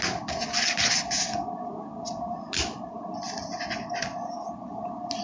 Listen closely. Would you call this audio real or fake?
real